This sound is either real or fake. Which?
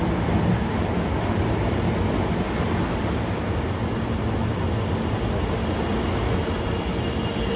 real